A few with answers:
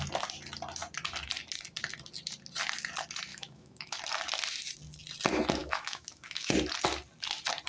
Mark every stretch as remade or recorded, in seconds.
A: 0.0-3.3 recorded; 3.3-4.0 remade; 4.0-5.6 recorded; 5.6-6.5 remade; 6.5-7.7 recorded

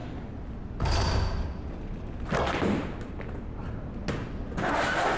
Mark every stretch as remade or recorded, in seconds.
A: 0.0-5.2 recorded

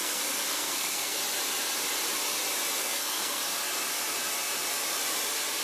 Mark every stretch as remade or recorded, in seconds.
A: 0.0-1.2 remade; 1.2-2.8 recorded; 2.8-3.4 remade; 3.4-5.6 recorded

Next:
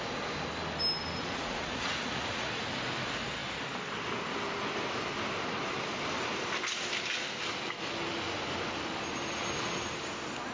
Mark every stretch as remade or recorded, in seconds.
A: 0.0-1.2 recorded; 1.2-2.5 remade; 2.5-10.5 recorded